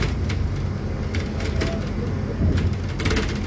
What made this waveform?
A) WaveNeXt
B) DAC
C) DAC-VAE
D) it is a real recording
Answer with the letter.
D